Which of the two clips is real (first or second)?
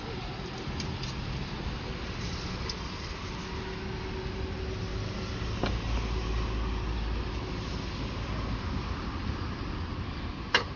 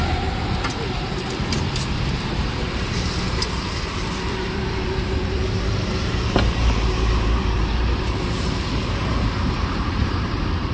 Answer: first